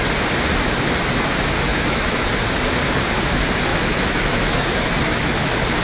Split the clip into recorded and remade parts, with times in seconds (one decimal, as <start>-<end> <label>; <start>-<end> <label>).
0.0-1.7 recorded; 1.7-2.3 remade; 2.3-3.7 recorded; 3.7-4.9 remade; 4.9-5.8 recorded